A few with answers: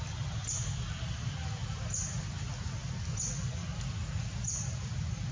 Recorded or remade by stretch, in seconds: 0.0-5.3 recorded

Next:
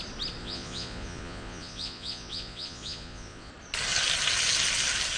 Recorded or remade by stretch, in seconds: 0.0-0.4 recorded; 0.4-3.5 remade; 3.5-5.2 recorded